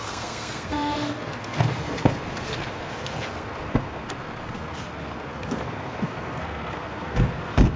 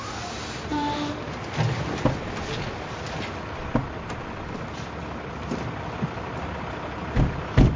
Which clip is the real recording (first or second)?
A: second